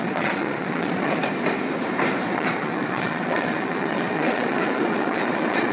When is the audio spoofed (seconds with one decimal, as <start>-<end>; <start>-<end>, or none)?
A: 0.0-1.2; 2.3-5.7

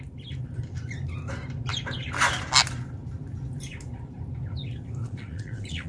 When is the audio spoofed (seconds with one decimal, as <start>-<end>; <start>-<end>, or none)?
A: 5.0-5.9

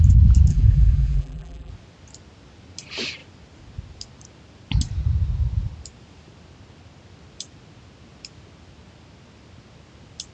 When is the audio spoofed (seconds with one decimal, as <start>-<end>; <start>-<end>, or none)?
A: 0.5-1.7

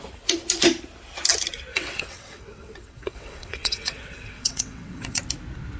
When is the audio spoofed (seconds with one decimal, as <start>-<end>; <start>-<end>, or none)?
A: 1.7-5.2

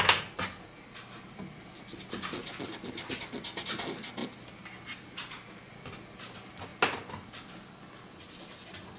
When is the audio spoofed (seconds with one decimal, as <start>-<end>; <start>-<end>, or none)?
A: none

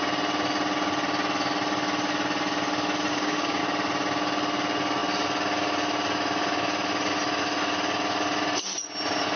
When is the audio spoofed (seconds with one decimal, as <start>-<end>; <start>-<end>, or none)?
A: 3.1-3.6

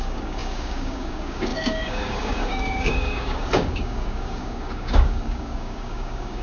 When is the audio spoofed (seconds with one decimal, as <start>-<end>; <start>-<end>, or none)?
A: 0.0-6.4